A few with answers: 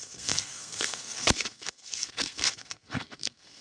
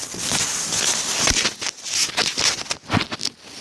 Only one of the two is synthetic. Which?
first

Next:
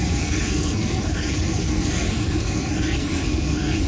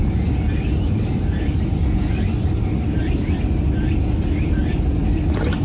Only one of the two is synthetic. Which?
first